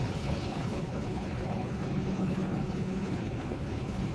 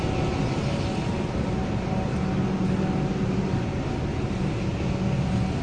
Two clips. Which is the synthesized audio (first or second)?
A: first